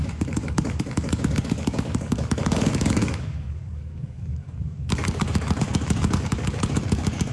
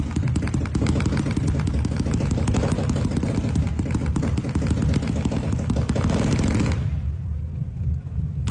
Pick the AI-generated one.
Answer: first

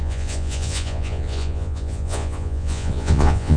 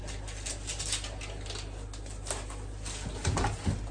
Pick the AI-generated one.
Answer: first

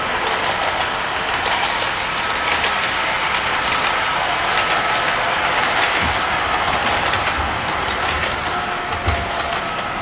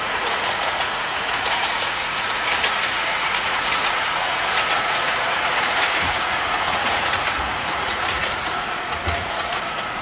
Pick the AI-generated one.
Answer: second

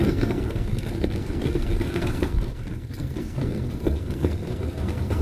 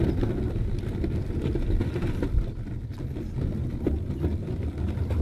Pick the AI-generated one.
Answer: first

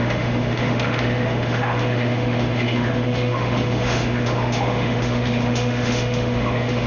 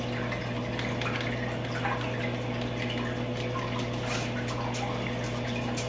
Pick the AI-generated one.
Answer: first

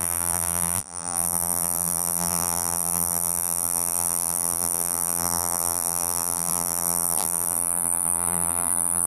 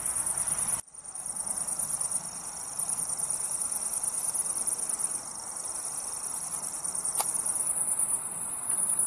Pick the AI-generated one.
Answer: first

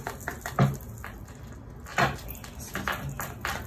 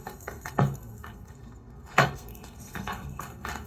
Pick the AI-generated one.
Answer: second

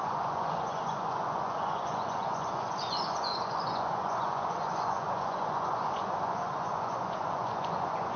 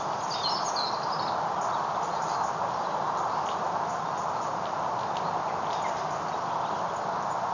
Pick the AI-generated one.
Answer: first